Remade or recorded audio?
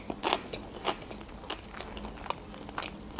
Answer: recorded